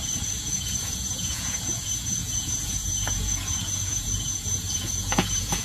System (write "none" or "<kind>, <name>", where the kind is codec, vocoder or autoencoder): vocoder, Vocos